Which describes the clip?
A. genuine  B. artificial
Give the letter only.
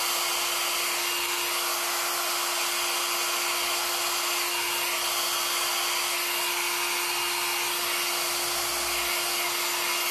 A